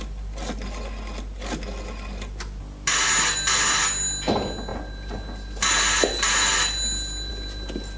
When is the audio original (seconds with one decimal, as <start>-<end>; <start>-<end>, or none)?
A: 0.0-8.0